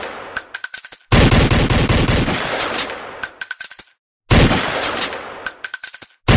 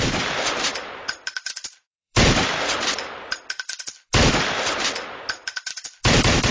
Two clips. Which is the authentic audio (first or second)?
first